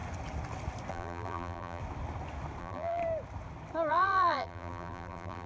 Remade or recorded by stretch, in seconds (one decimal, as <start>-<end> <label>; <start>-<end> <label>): 0.0-0.9 recorded; 0.9-1.8 remade; 1.8-2.6 recorded; 2.6-3.0 remade; 3.0-3.9 recorded; 3.9-5.5 remade